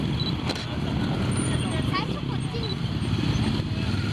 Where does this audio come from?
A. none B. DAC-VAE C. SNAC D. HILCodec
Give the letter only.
A